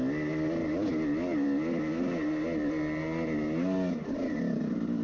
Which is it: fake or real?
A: real